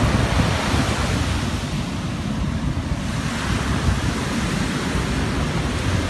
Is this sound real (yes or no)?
yes